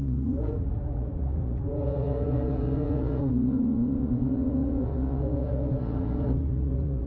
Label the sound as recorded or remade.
remade